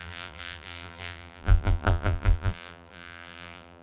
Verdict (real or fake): fake